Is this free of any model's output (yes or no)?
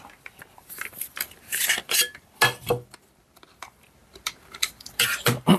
no